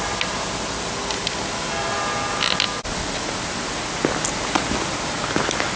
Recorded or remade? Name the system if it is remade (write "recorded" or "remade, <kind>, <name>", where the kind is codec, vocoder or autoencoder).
recorded